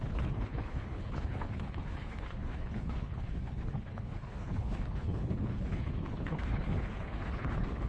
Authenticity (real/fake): fake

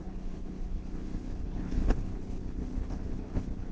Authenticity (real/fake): fake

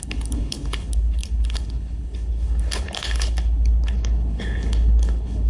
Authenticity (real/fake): fake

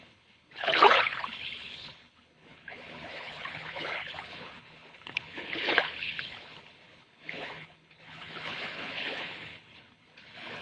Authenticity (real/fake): fake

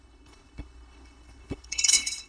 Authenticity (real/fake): fake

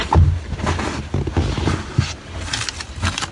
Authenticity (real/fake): real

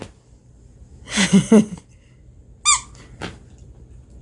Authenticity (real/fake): real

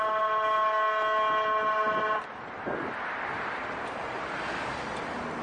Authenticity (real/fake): real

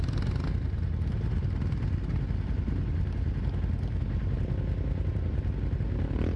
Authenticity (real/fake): real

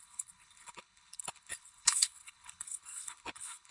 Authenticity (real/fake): fake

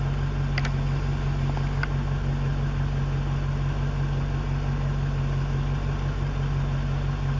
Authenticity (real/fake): real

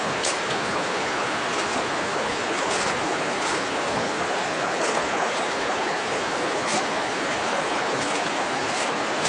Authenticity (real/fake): fake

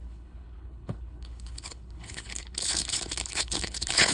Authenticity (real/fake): fake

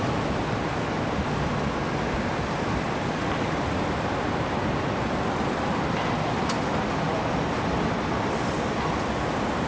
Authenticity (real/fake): real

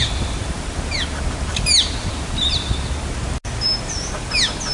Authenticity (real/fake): real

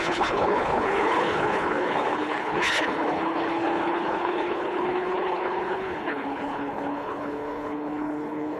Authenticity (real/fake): fake